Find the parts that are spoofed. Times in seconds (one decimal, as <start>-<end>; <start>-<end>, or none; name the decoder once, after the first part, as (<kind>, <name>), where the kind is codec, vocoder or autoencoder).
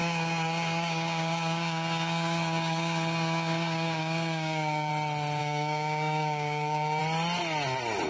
0.0-4.9 (codec, DAC); 5.4-7.0